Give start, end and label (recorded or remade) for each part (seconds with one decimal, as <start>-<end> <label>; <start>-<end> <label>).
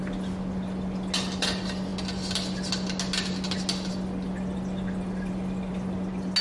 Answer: 0.0-6.4 recorded